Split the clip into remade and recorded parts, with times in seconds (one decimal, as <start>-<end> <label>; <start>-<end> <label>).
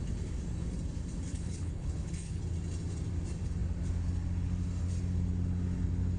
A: 0.0-1.3 recorded; 1.3-2.4 remade; 2.4-6.2 recorded